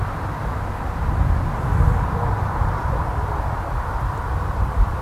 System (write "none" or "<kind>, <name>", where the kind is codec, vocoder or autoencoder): vocoder, BigVGAN v2